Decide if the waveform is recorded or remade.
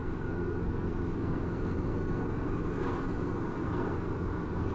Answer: remade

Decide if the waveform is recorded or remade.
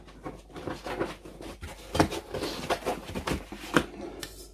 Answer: recorded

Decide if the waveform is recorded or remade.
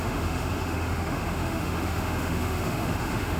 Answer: remade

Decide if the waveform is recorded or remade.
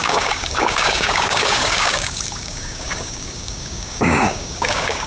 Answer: remade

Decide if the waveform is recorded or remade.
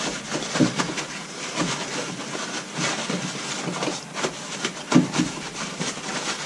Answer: recorded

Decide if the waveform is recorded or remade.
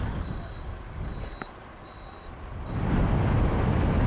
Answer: recorded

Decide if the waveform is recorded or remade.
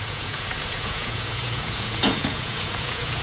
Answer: remade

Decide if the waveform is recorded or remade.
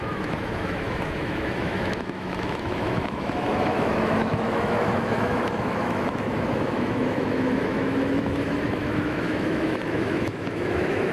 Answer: remade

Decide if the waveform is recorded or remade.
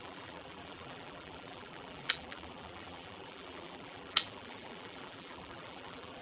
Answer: remade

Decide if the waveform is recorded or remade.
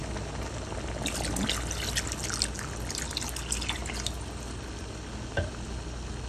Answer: recorded